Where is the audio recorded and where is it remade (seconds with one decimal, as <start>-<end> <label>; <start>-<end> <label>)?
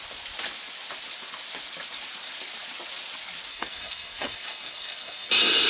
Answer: 0.0-3.5 recorded; 3.5-5.3 remade; 5.3-5.7 recorded